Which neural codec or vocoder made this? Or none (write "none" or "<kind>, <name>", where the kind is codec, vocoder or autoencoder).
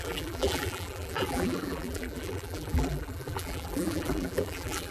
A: vocoder, BigVGAN v2